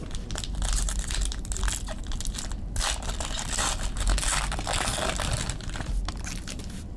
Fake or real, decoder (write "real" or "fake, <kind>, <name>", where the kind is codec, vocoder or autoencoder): real